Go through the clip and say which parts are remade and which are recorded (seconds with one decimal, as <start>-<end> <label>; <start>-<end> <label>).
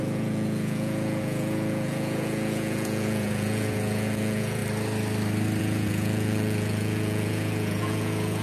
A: 0.0-4.6 remade; 4.6-5.6 recorded; 5.6-8.4 remade